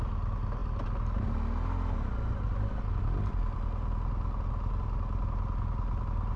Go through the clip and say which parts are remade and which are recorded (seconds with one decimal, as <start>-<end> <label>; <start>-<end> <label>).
0.0-6.4 recorded